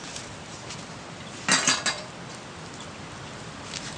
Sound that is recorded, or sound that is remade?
recorded